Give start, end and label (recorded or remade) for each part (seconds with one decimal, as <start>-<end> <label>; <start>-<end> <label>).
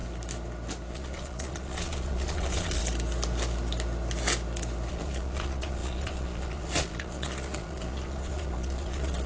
0.0-0.9 recorded; 0.9-2.8 remade; 2.8-4.9 recorded; 4.9-9.3 remade